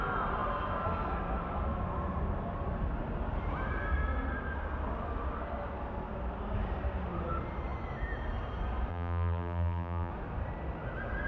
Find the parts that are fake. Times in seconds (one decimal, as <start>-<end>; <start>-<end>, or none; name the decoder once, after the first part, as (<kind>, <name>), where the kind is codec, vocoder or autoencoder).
8.9-10.1 (vocoder, BigVGAN v2)